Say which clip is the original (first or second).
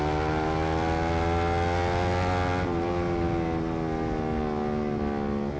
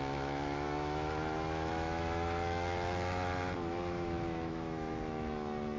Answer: first